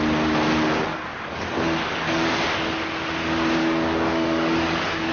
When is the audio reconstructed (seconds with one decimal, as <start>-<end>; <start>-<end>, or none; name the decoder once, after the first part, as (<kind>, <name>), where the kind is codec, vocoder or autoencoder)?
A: 0.9-2.4 (codec, DAC); 3.6-5.1